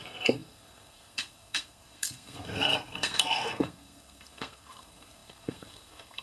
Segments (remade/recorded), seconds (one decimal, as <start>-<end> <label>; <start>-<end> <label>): 0.0-6.2 remade